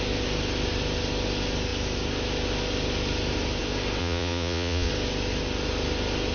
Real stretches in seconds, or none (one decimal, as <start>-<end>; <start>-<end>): 0.0-4.0; 4.9-6.3